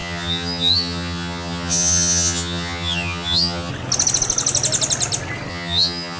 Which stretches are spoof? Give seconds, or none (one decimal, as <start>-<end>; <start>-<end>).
0.0-3.7; 5.5-6.2